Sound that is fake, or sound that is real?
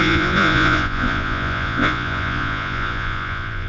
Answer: fake